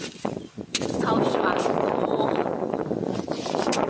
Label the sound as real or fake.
fake